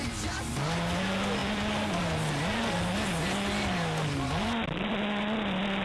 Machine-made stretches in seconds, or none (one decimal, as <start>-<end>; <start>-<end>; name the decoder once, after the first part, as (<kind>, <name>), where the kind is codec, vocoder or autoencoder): none